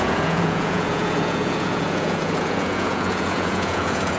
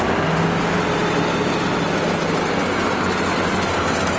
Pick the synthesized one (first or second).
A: first